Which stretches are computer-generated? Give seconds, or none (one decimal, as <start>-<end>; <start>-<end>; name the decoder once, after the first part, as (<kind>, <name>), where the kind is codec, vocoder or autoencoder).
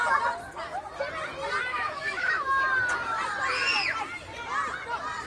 1.7-2.6 (autoencoder, DAC-VAE)